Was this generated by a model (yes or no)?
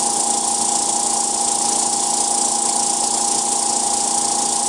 no